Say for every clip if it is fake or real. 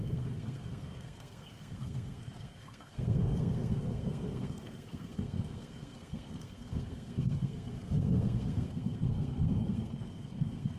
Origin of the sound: fake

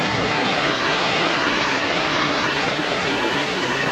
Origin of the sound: fake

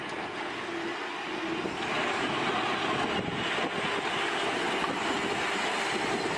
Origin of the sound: real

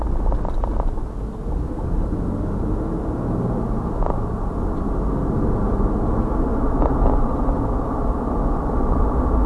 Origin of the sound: real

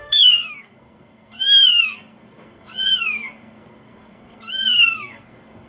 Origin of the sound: fake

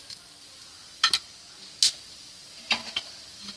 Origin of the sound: real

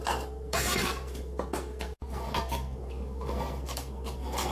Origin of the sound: fake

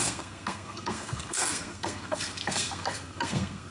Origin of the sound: fake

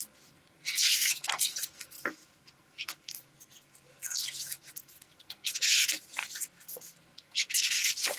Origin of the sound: fake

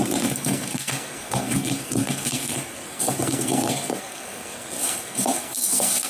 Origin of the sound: fake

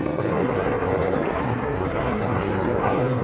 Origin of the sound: fake